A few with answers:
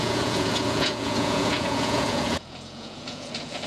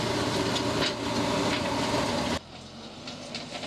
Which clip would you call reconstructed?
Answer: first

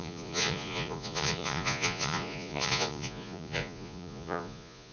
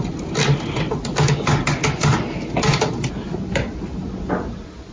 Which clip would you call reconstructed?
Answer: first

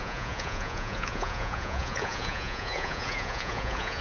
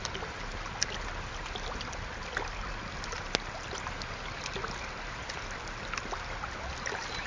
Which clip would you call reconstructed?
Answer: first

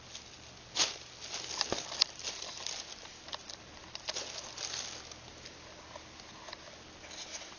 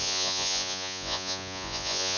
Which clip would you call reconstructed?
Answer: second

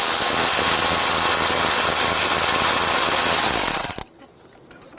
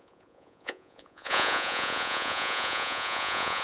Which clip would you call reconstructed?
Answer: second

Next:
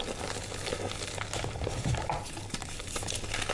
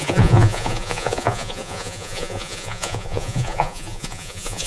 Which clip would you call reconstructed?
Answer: second